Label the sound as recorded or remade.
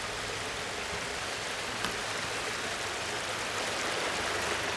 recorded